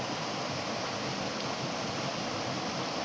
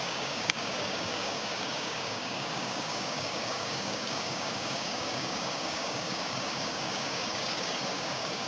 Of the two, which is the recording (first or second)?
first